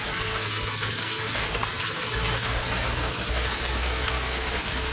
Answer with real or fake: fake